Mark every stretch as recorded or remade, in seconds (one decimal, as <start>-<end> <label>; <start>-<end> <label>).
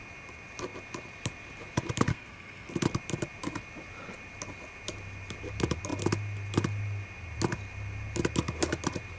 0.0-2.1 recorded; 2.1-2.7 remade; 2.7-9.2 recorded